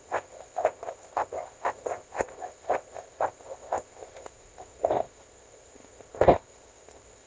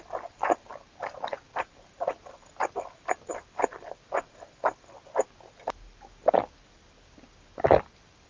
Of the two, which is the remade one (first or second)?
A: first